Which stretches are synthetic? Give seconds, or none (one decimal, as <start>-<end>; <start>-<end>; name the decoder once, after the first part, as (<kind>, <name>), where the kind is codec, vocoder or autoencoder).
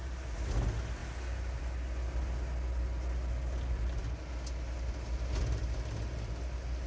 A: none